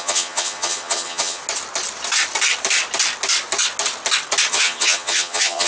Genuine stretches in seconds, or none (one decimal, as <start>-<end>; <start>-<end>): 1.4-4.5